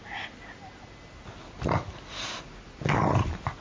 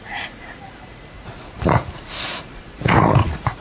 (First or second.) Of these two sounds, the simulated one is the second